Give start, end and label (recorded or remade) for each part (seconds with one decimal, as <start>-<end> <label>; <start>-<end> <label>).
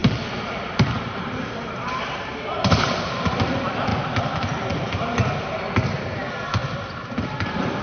0.0-2.3 remade; 2.3-7.8 recorded